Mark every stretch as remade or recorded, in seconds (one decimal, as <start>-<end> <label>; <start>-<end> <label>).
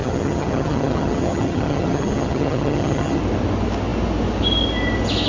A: 0.0-3.2 remade; 3.2-5.3 recorded